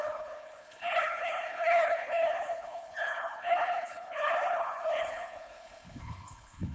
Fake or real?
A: fake